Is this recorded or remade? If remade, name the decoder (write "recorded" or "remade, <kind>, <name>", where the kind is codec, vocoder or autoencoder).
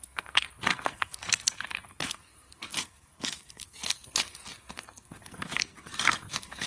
remade, codec, SNAC